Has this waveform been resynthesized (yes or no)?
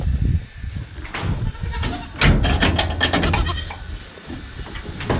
no